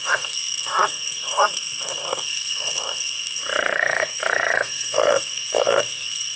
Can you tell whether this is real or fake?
fake